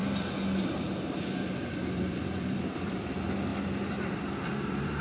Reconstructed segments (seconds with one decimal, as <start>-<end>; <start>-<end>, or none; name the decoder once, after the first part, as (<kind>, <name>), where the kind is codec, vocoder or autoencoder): 0.6-3.5 (vocoder, BigVGAN v2); 4.0-5.0